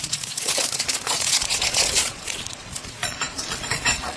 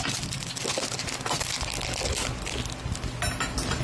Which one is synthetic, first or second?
first